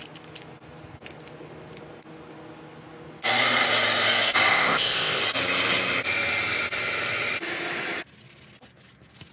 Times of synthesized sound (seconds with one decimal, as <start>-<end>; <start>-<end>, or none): 4.5-5.2